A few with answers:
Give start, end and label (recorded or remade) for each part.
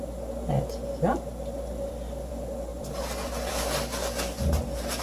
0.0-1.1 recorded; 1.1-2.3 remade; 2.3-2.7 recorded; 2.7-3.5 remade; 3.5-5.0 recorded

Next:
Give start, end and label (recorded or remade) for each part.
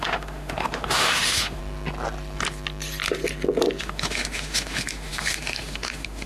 0.0-1.6 remade; 1.6-3.8 recorded; 3.8-6.3 remade